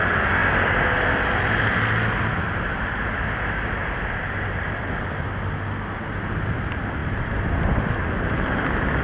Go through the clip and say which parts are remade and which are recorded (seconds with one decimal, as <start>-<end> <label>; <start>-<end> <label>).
0.0-9.0 recorded